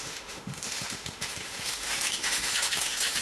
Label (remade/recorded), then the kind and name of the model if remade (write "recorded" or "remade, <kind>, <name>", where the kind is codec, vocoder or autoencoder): remade, autoencoder, DAC-VAE